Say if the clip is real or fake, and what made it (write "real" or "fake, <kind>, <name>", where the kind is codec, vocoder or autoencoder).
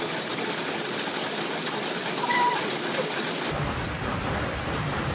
fake, vocoder, BigVGAN v2